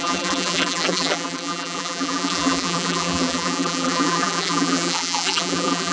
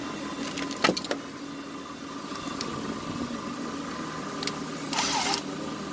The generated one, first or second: first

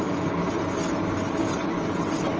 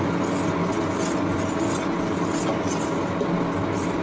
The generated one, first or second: first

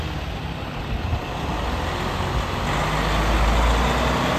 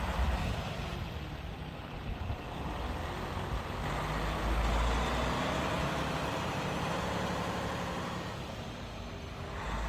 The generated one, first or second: second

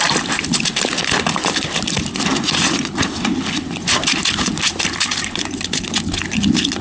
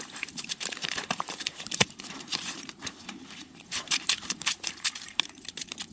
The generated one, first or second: second